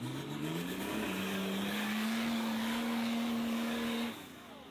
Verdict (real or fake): fake